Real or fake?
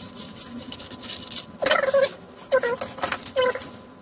real